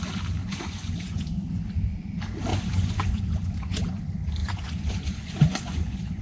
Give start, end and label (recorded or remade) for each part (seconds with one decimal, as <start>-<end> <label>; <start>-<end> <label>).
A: 0.0-0.4 recorded; 0.4-1.6 remade; 1.6-2.5 recorded; 2.5-4.0 remade; 4.0-4.4 recorded; 4.4-6.2 remade